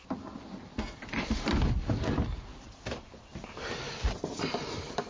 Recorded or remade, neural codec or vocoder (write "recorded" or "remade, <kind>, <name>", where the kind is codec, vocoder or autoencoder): recorded